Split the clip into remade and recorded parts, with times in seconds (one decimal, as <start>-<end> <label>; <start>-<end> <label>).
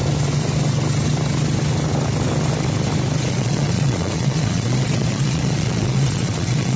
0.0-3.3 recorded; 3.3-6.8 remade